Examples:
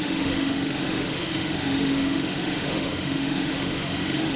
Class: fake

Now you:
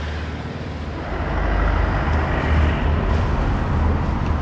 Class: real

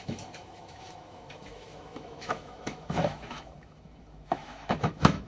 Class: fake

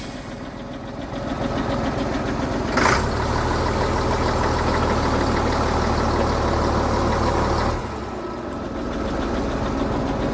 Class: real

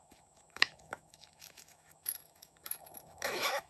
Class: fake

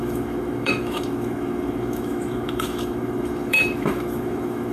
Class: fake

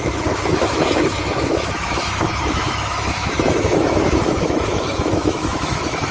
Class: fake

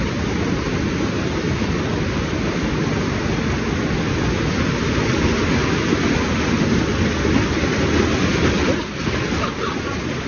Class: real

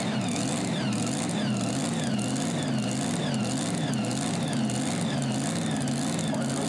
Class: real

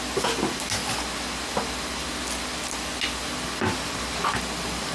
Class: real